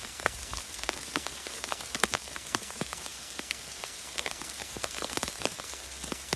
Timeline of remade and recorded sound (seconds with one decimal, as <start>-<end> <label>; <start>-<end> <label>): 0.0-6.4 remade